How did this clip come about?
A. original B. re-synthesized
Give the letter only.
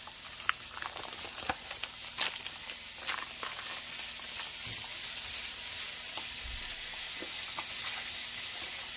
A